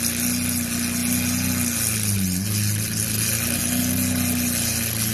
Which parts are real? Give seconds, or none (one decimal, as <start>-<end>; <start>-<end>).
0.0-5.1